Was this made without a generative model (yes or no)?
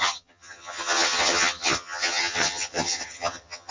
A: no